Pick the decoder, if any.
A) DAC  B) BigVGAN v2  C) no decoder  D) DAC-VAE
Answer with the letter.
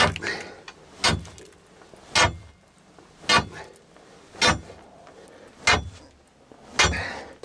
C